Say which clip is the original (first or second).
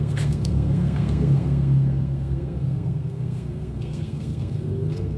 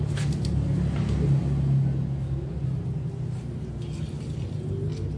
second